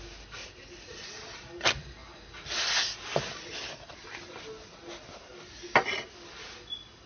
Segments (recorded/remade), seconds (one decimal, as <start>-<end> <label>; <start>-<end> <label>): 0.0-7.1 recorded